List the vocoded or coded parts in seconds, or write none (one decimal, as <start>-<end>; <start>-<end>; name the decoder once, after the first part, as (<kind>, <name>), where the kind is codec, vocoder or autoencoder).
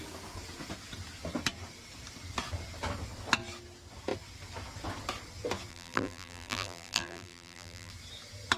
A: 5.7-7.9 (vocoder, BigVGAN v2)